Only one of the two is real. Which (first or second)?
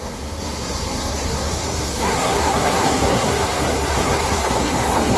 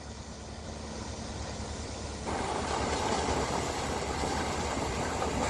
second